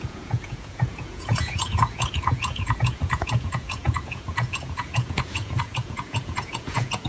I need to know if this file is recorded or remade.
remade